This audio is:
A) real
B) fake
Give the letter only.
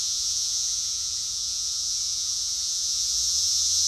B